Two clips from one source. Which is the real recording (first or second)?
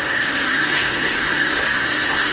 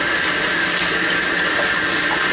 second